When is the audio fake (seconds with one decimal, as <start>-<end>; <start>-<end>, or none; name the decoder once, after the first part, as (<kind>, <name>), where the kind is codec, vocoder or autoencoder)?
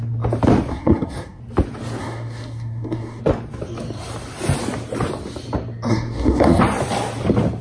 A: 0.7-1.4 (codec, SNAC); 2.0-3.2; 5.9-6.6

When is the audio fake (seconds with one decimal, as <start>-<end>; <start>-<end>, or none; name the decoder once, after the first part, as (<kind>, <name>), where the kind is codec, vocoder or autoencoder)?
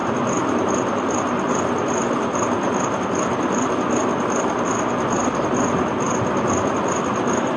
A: none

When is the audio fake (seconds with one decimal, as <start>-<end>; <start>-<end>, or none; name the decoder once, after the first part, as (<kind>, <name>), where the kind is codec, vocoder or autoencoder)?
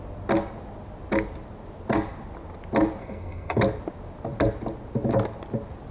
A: 3.0-3.6 (codec, SNAC)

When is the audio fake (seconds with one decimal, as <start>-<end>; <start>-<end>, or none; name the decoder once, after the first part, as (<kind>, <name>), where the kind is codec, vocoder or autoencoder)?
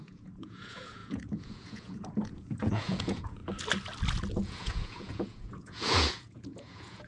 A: 0.0-3.4 (vocoder, Vocos); 4.3-7.1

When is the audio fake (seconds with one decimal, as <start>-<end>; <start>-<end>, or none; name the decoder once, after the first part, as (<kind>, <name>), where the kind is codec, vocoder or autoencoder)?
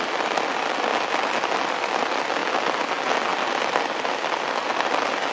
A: none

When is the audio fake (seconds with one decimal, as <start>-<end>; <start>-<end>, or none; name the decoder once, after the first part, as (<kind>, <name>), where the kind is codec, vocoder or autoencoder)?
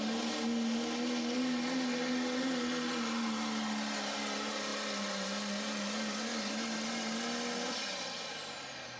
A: none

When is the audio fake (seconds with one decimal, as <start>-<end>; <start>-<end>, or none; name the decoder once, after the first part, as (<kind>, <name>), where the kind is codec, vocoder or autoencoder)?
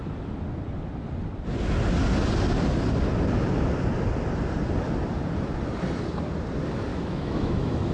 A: 6.9-7.9 (autoencoder, DAC-VAE)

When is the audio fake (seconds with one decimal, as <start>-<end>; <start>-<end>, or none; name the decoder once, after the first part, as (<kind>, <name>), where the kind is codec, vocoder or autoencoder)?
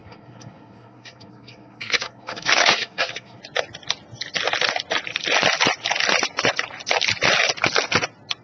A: 0.0-3.4 (codec, SNAC)